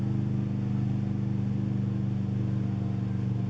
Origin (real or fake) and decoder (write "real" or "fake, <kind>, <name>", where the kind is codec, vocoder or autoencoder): real